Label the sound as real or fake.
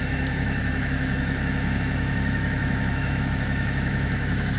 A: fake